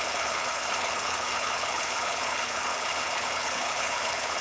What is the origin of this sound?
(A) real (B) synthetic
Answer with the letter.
B